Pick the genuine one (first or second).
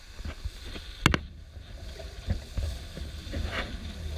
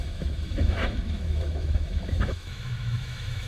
first